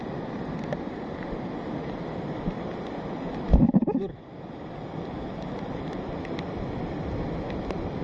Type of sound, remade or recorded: recorded